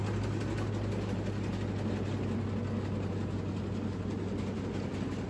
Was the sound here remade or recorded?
recorded